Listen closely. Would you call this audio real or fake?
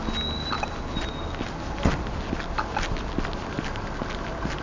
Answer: real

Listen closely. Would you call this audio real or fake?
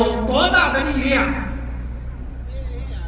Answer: real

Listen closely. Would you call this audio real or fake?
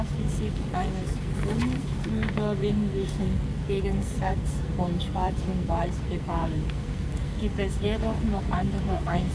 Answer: fake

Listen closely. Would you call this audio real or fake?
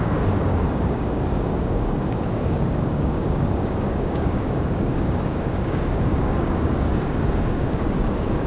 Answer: fake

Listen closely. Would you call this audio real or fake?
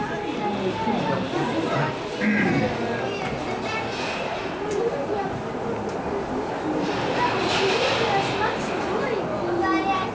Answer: real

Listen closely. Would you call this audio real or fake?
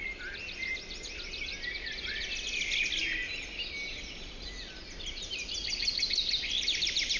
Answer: real